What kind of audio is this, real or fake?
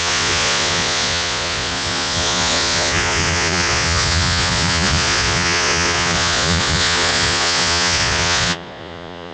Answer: fake